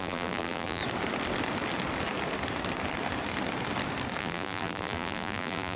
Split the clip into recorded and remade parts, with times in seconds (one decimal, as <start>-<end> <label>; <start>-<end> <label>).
0.0-0.8 remade; 0.8-4.2 recorded; 4.2-5.8 remade